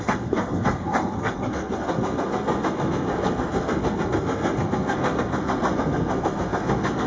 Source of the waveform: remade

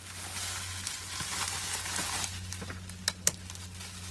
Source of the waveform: recorded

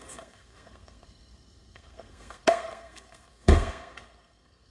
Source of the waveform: remade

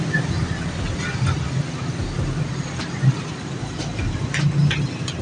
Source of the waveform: recorded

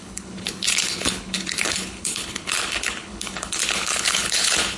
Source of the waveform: remade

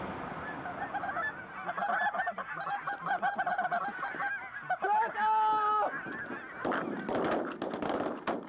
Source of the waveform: recorded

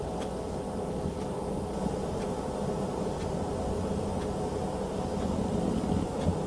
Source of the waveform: recorded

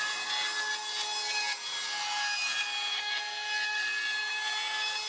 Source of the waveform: recorded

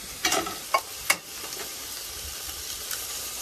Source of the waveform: remade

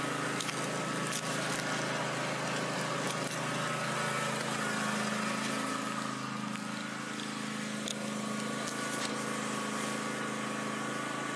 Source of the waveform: recorded